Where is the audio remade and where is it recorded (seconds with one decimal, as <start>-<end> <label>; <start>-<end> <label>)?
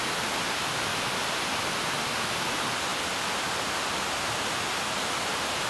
0.0-0.9 remade; 0.9-2.1 recorded; 2.1-2.9 remade; 2.9-3.8 recorded; 3.8-5.7 remade